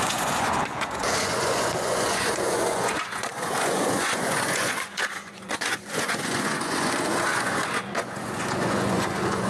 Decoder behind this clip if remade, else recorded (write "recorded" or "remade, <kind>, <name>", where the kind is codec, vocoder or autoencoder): remade, vocoder, Vocos